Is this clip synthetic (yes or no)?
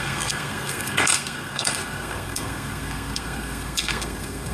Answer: yes